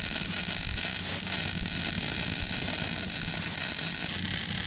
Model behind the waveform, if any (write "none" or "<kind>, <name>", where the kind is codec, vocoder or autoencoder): none